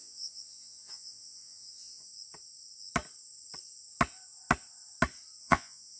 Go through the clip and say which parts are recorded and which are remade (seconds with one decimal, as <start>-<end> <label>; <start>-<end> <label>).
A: 0.0-2.1 remade; 2.1-5.4 recorded; 5.4-6.0 remade